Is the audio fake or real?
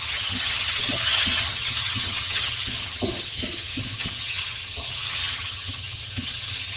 fake